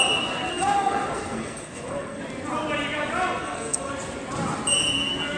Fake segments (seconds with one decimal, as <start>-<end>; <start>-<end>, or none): 0.5-2.2; 3.4-3.9